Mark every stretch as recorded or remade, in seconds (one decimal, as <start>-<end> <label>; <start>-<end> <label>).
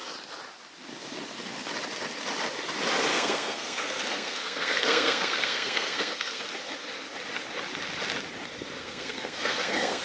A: 0.0-3.1 recorded; 3.1-6.4 remade; 6.4-8.8 recorded; 8.8-10.0 remade